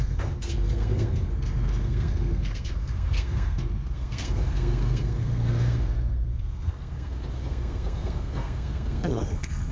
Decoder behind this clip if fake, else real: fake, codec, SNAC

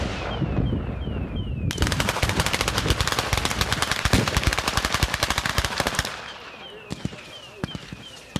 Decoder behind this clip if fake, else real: real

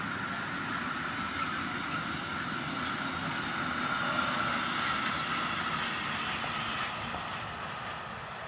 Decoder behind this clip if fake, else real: real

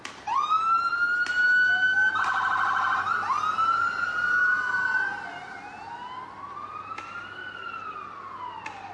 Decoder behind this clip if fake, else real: real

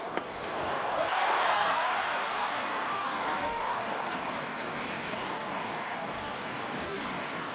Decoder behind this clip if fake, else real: fake, codec, DAC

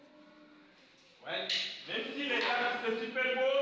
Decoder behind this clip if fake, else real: real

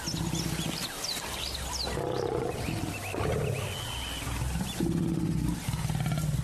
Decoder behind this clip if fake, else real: real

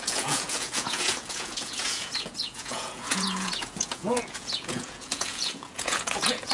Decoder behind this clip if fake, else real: fake, vocoder, Vocos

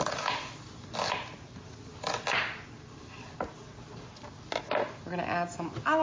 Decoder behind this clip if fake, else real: real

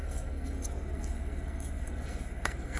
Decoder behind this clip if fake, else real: fake, codec, SNAC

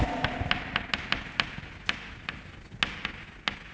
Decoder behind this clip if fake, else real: real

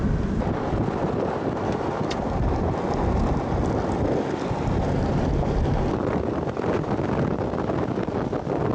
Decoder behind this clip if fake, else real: real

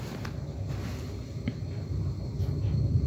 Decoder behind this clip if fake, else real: real